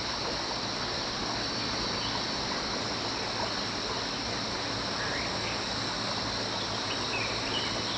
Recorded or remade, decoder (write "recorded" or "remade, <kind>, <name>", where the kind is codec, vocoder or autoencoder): recorded